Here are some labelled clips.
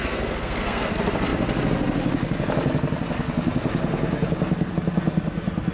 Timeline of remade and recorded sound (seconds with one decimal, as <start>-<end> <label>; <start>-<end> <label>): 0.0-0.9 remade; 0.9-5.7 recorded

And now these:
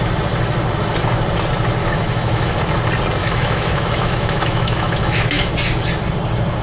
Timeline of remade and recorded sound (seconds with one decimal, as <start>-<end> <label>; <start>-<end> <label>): 0.0-1.8 recorded; 1.8-2.6 remade; 2.6-3.2 recorded; 3.2-5.5 remade; 5.5-6.6 recorded

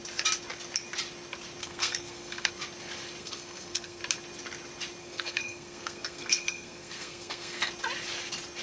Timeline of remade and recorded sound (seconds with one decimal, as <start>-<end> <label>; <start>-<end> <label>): 0.0-1.6 recorded; 1.6-2.5 remade; 2.5-3.2 recorded; 3.2-4.0 remade; 4.0-5.0 recorded; 5.0-7.7 remade; 7.7-8.6 recorded

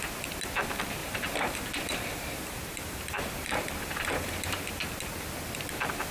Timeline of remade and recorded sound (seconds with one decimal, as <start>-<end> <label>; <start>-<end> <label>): 0.0-1.0 recorded; 1.0-4.7 remade; 4.7-6.1 recorded

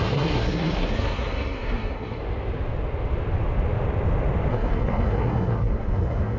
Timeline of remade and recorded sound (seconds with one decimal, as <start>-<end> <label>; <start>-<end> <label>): 0.0-2.2 remade; 2.2-4.5 recorded; 4.5-6.4 remade